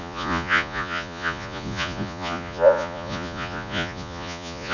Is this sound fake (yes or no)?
yes